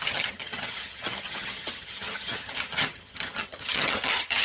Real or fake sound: fake